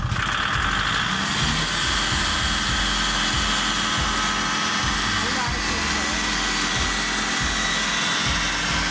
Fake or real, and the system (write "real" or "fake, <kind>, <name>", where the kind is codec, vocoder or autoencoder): real